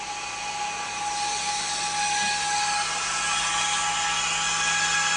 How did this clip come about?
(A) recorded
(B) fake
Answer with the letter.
A